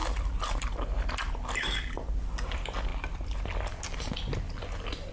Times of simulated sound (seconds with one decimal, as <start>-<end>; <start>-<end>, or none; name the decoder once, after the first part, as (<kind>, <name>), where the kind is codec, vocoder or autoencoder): none